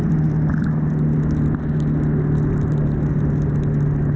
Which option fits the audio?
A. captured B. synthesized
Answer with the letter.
A